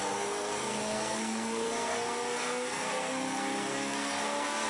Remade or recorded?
remade